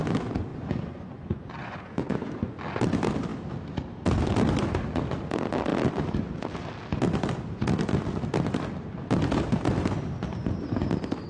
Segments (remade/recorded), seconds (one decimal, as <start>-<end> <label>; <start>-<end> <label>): 0.0-0.5 recorded; 0.5-2.6 remade; 2.6-11.3 recorded